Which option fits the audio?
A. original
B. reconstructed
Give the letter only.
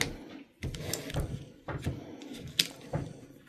A